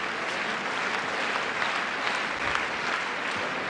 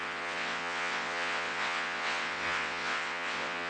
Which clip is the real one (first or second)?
first